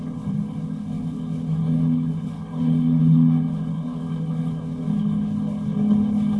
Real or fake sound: fake